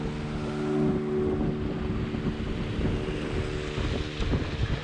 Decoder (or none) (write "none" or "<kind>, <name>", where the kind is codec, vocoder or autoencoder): none